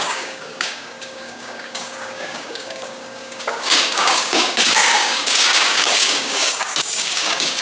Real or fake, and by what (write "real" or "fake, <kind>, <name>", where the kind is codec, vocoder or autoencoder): fake, codec, DAC